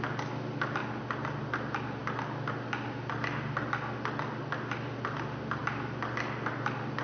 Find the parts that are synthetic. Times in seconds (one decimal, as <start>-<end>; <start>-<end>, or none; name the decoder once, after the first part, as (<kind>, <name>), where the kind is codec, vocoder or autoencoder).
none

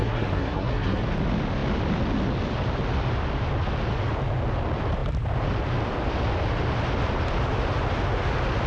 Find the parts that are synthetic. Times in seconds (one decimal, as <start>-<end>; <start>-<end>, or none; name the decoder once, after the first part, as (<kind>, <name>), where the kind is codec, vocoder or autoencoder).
0.0-1.0 (codec, SNAC)

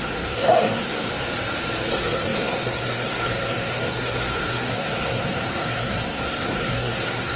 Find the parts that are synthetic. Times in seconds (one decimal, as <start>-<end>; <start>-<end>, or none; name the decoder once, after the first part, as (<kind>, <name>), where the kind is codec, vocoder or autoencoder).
0.0-1.1 (codec, SNAC); 1.9-7.4

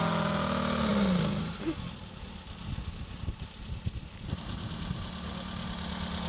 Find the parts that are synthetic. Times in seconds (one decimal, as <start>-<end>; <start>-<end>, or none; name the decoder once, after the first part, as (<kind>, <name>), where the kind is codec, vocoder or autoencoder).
none

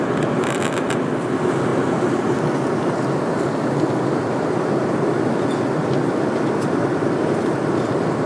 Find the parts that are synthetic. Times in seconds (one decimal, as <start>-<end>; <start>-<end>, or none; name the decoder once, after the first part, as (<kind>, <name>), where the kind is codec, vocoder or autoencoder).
none